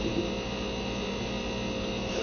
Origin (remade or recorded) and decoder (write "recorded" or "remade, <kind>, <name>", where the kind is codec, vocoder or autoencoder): recorded